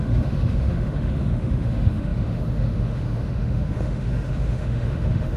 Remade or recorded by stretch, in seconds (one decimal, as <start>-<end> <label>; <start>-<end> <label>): 0.0-5.4 remade